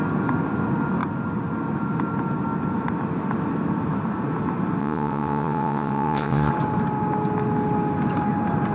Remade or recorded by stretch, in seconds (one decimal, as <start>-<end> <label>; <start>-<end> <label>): 0.0-4.8 recorded; 4.8-6.5 remade; 6.5-8.7 recorded